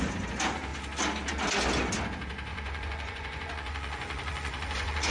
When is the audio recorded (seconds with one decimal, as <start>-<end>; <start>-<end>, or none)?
0.0-2.5